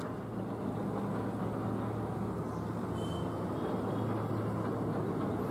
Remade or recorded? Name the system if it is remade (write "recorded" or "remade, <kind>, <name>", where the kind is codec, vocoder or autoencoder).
recorded